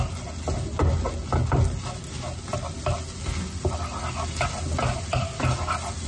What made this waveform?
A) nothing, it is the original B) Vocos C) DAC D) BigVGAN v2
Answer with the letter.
A